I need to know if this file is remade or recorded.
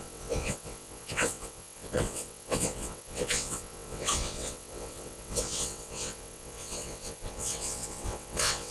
remade